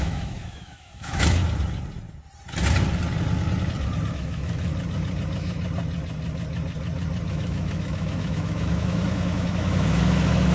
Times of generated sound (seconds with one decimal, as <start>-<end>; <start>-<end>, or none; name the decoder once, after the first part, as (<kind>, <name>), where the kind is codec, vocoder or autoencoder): 0.0-1.4 (autoencoder, DAC-VAE); 4.1-4.7; 7.3-10.5